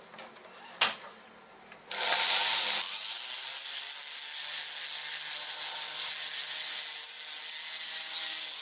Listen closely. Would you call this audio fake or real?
real